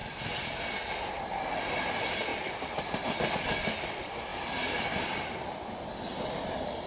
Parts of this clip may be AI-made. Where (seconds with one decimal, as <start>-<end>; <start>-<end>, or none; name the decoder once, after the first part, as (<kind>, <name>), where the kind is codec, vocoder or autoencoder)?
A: 0.0-0.7 (vocoder, BigVGAN v2); 2.3-3.2; 4.3-6.9

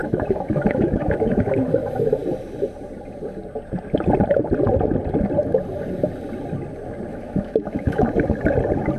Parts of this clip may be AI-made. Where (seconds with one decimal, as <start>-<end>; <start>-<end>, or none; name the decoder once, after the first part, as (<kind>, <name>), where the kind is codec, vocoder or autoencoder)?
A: 0.0-1.7 (autoencoder, DAC-VAE); 7.1-8.0

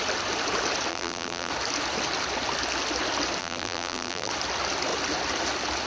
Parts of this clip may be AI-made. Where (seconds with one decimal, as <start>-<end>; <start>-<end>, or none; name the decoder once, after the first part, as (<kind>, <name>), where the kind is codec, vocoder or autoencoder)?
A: 0.9-1.5 (vocoder, BigVGAN v2); 3.4-4.3

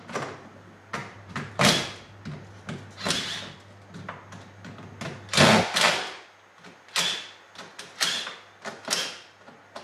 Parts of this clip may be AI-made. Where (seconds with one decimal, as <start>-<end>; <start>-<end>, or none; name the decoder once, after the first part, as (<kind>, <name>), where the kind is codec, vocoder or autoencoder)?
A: 1.0-1.5 (vocoder, BigVGAN v2)